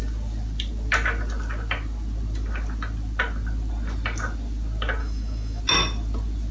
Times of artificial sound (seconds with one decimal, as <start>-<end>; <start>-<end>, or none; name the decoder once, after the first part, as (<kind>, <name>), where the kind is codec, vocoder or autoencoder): 5.0-5.6 (autoencoder, DAC-VAE)

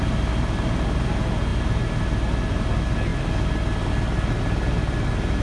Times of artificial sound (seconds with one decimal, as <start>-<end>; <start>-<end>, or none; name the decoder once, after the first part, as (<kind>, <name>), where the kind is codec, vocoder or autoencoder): none

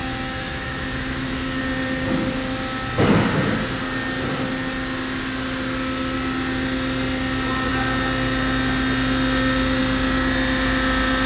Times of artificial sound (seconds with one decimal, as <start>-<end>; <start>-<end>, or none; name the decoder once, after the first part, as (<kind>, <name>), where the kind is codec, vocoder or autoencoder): 0.0-1.6 (autoencoder, DAC-VAE)

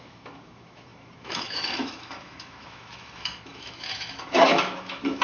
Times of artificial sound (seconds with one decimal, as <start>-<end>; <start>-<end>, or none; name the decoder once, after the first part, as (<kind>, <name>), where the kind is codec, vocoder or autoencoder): 0.0-5.2 (autoencoder, DAC-VAE)

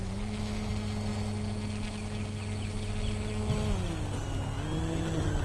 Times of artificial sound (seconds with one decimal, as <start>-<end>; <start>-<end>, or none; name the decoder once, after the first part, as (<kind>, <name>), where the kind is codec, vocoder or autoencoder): 0.0-0.7 (autoencoder, DAC-VAE)

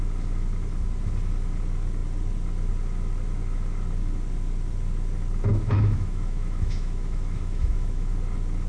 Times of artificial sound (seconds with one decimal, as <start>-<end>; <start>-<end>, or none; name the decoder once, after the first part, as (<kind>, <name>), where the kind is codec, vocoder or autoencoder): 5.5-8.1 (autoencoder, DAC-VAE)